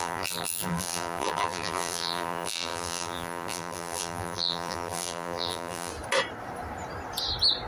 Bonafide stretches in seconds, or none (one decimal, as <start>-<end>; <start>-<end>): 5.9-7.7